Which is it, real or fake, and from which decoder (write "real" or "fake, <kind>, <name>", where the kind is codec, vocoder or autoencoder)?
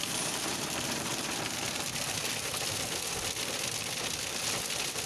real